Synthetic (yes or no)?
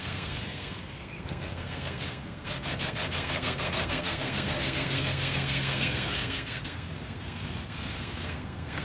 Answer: yes